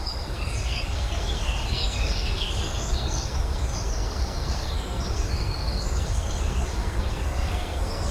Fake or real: fake